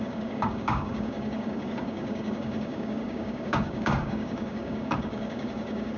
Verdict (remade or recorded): remade